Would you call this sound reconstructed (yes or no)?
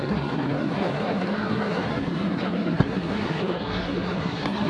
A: yes